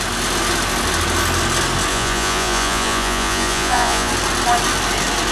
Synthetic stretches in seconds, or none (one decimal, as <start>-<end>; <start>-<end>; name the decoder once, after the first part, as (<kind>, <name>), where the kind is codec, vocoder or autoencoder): 1.9-4.1 (vocoder, Vocos)